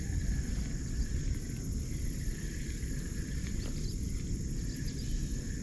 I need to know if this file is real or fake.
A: real